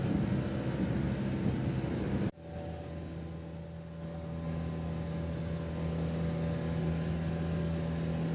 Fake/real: real